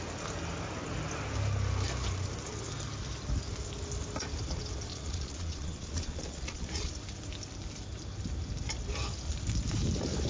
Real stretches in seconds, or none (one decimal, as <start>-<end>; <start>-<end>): 0.0-4.9; 6.9-10.3